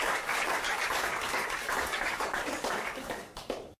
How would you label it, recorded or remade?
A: remade